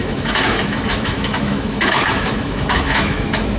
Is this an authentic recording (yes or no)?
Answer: no